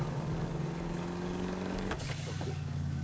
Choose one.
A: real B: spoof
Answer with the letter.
B